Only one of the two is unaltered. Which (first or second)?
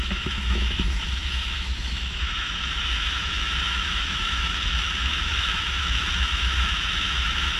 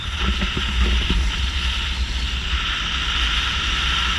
second